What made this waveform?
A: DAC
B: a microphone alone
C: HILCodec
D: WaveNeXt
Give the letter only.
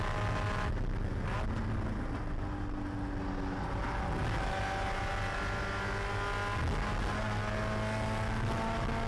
B